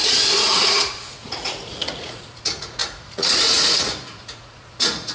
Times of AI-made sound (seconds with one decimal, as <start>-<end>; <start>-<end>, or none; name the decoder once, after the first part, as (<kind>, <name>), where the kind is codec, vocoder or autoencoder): 0.0-5.1 (vocoder, Vocos)